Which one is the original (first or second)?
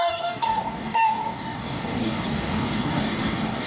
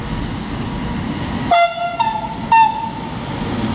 second